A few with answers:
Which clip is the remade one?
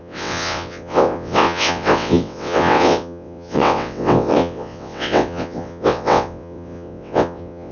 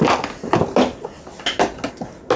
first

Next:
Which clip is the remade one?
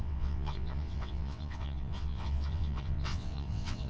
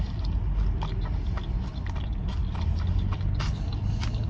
first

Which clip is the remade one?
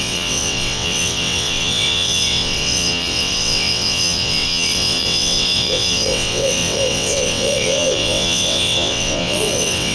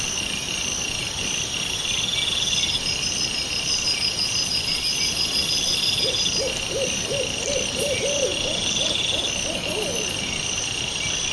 first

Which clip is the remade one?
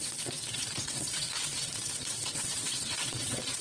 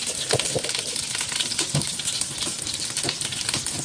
first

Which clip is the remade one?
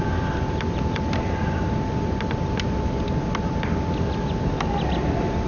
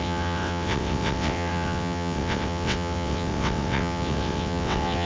second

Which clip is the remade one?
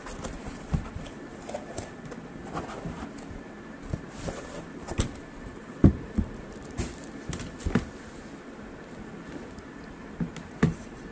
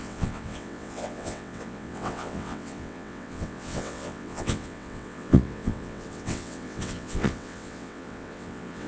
second